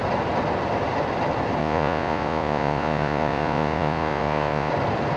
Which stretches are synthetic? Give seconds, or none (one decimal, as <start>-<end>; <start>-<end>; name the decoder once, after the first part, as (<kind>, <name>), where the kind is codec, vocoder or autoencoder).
1.6-4.7 (vocoder, Vocos)